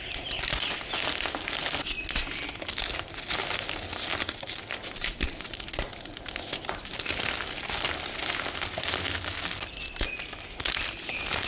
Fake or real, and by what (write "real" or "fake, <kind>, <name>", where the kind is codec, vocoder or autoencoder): real